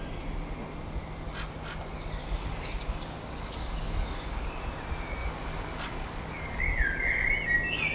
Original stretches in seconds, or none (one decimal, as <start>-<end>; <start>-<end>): 0.0-2.2; 4.6-5.2; 6.6-7.9